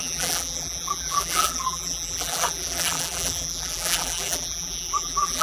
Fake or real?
fake